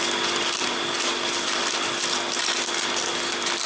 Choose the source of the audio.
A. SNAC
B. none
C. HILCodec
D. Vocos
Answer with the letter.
B